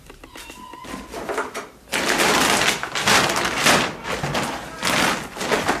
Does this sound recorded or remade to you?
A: recorded